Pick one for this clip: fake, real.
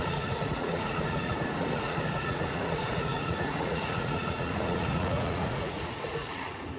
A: fake